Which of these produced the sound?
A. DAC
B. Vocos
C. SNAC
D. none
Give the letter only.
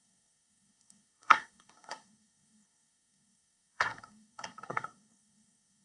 C